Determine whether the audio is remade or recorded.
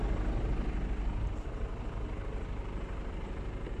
recorded